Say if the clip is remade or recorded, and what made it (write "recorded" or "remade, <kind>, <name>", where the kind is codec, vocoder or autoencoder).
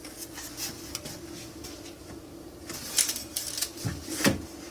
recorded